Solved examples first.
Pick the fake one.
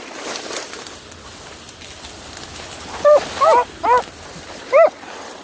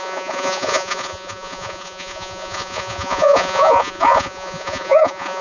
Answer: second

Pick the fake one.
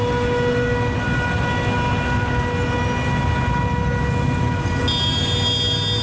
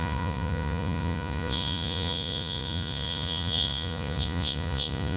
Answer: second